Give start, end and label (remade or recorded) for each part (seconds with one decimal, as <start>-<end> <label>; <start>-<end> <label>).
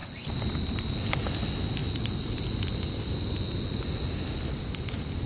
0.0-5.3 recorded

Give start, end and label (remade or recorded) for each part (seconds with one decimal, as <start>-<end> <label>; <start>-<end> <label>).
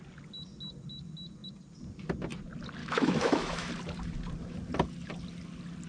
0.0-2.8 recorded; 2.8-3.7 remade; 3.7-5.9 recorded